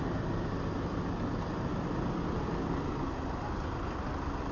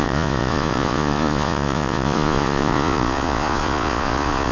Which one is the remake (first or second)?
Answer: second